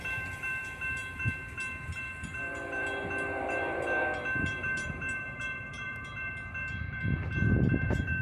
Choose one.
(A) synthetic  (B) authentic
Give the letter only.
A